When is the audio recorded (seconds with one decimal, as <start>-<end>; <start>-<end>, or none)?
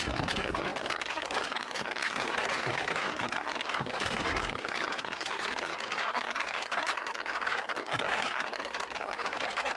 none